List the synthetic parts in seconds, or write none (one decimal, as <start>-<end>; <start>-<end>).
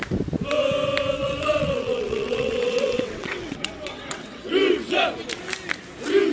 1.2-5.0